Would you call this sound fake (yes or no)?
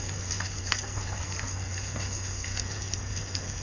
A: yes